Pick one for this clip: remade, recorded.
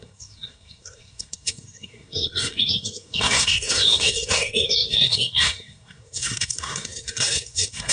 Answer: remade